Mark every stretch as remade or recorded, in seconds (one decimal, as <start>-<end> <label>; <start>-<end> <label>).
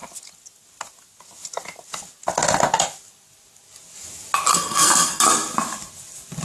0.0-4.5 recorded; 4.5-5.2 remade; 5.2-6.4 recorded